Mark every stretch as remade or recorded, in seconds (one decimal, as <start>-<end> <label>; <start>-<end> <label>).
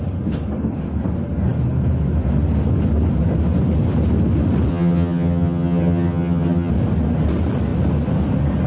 0.0-4.7 recorded; 4.7-6.7 remade; 6.7-8.7 recorded